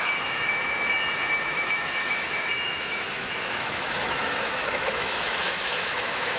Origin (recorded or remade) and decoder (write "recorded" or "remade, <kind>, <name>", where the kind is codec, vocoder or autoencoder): remade, autoencoder, DAC-VAE